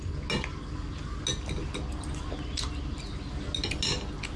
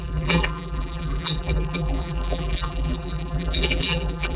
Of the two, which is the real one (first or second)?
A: first